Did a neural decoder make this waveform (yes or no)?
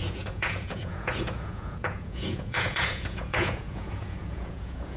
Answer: yes